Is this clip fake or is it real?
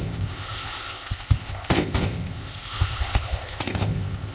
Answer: fake